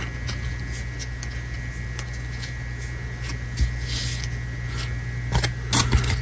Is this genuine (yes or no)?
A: yes